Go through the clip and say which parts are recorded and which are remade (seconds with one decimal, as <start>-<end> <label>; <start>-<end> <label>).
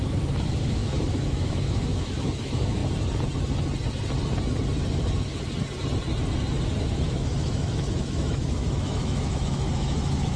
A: 0.0-2.8 remade; 2.8-6.8 recorded; 6.8-10.4 remade